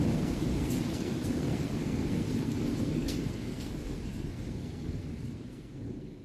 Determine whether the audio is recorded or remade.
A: remade